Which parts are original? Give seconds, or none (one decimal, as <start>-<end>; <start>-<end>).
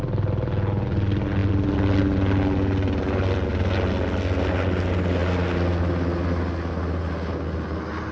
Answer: 0.0-8.1